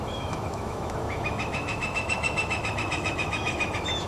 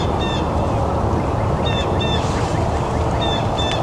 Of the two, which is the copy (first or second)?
first